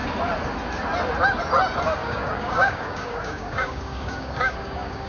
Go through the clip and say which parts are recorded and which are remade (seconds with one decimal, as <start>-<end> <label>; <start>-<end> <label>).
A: 0.0-2.0 recorded; 2.0-5.1 remade